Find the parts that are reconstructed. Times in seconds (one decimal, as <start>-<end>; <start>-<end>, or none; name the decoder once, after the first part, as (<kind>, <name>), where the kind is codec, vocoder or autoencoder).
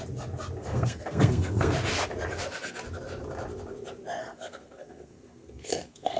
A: 0.6-1.7 (codec, SNAC); 4.2-6.2